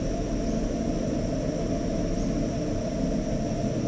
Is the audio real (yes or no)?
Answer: yes